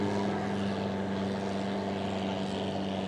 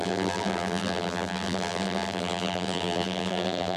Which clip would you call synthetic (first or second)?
second